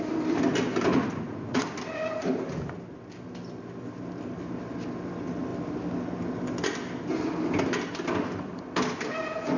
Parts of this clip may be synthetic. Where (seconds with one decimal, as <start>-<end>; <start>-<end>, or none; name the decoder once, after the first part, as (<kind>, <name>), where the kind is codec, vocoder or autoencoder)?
0.9-1.6 (vocoder, Vocos)